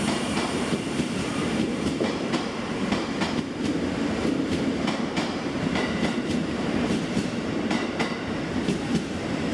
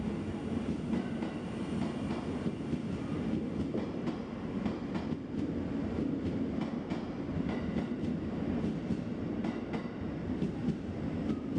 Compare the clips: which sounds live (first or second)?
second